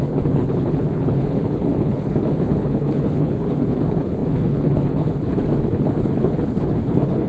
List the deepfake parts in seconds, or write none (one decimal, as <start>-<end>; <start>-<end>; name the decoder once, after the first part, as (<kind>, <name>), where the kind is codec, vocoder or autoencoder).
0.0-7.3 (codec, HILCodec)